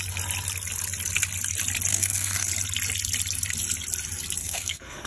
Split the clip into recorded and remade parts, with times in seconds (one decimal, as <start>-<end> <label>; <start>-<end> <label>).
0.0-1.9 recorded; 1.9-2.5 remade; 2.5-4.4 recorded; 4.4-5.1 remade